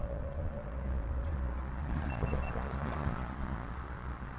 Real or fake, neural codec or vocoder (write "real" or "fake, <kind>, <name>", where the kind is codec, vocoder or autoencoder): fake, vocoder, Vocos